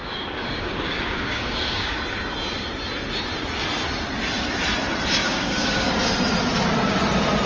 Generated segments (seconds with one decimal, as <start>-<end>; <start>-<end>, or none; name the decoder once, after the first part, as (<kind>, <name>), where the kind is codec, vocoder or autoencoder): 0.0-2.0 (codec, DAC); 5.2-5.9